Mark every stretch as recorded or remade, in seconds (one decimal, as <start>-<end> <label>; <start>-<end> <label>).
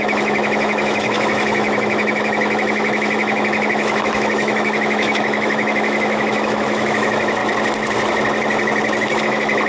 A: 0.0-7.4 remade; 7.4-9.2 recorded; 9.2-9.7 remade